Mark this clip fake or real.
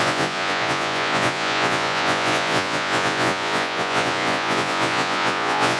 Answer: fake